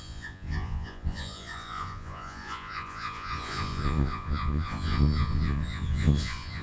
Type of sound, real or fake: fake